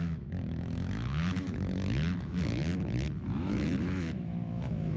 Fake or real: fake